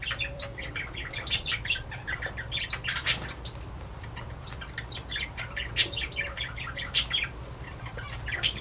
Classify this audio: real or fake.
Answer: fake